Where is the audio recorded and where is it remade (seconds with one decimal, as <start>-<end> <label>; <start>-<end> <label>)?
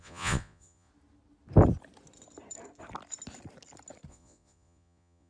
0.0-0.9 remade; 0.9-4.1 recorded; 4.1-5.3 remade